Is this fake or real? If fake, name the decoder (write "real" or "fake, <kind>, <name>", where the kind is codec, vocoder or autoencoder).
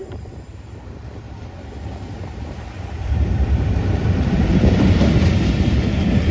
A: fake, vocoder, BigVGAN v2